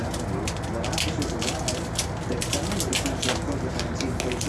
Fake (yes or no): no